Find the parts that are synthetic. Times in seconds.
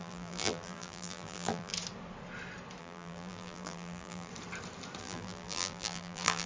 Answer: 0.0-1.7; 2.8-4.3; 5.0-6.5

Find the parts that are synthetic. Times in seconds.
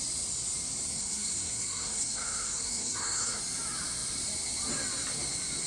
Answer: 0.9-3.4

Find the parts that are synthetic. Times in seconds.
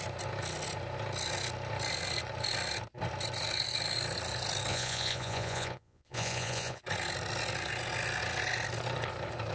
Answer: 4.7-6.8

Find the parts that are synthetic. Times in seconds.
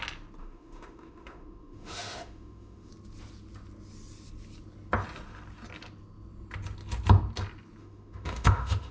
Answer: 0.4-2.9; 7.8-8.9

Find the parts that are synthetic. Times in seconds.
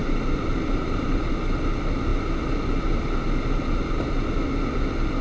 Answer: 0.0-1.3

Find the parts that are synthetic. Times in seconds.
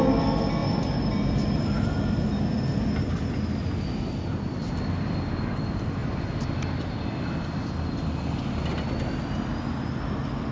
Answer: none